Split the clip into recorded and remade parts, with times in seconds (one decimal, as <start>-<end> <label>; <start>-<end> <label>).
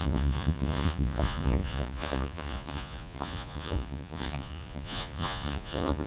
0.0-6.1 remade